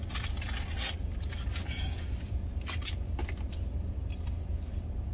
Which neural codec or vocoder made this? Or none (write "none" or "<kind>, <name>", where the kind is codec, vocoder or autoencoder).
none